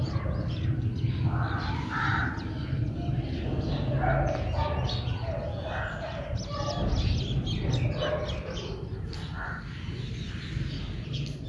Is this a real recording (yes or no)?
yes